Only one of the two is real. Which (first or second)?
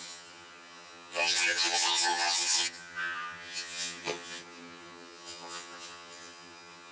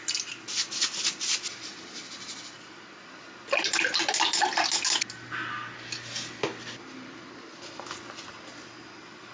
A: second